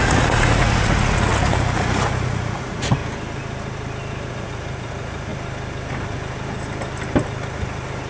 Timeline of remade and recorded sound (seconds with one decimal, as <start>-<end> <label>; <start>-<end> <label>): 0.0-3.0 remade; 3.0-4.2 recorded; 4.2-5.3 remade; 5.3-8.1 recorded